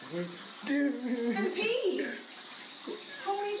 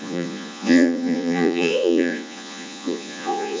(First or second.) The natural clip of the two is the first